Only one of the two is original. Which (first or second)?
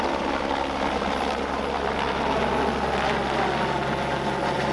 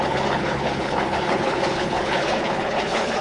first